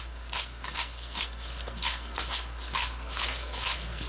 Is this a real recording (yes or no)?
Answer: no